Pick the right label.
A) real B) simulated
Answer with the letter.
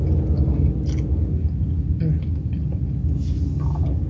A